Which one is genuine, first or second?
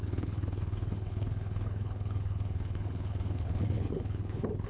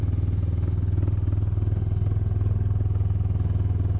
second